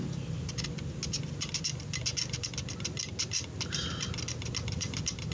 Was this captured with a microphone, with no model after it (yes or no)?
yes